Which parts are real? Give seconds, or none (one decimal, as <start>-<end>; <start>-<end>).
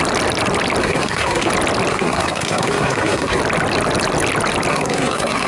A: 0.0-0.8; 1.5-1.9; 3.4-4.7